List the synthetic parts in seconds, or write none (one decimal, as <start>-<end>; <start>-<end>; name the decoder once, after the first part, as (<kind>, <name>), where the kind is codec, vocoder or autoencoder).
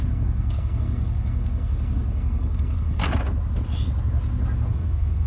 0.0-3.0 (codec, SNAC); 4.7-5.3